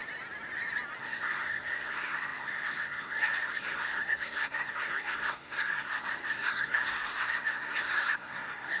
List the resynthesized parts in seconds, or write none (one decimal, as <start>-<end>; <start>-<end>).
1.0-8.8